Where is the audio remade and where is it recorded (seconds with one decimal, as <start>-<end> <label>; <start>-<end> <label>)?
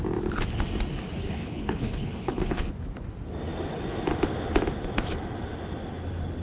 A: 0.0-1.2 recorded; 1.2-2.7 remade; 2.7-6.4 recorded